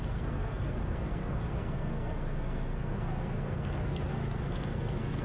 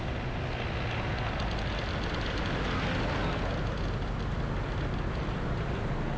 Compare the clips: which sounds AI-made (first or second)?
first